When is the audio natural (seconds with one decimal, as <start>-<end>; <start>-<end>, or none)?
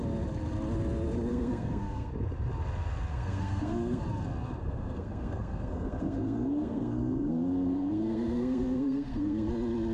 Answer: 0.0-1.3; 2.1-3.1; 4.0-4.6; 9.5-9.9